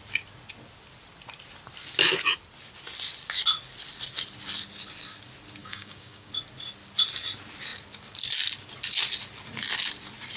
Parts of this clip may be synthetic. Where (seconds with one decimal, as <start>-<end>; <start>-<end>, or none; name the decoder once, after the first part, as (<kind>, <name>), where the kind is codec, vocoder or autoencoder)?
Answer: 5.6-6.3 (codec, DAC)